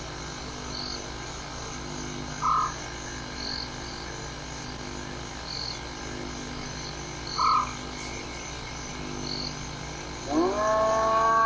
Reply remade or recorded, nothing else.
recorded